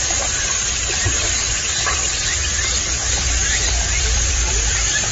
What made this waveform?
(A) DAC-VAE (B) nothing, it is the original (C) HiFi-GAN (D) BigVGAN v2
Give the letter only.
D